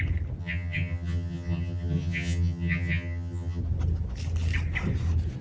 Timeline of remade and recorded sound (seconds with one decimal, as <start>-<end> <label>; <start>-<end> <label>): 0.0-0.4 recorded; 0.4-3.6 remade; 3.6-5.4 recorded